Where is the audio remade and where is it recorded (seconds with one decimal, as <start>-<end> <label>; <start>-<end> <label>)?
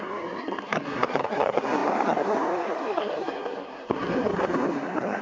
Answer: 0.0-5.2 remade